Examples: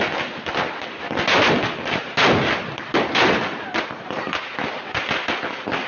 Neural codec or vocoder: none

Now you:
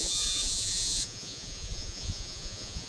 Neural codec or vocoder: vocoder, Vocos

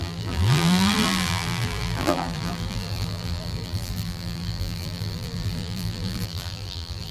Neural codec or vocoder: vocoder, BigVGAN v2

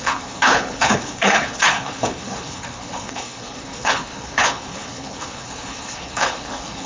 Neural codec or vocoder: codec, HILCodec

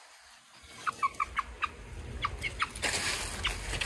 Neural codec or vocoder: none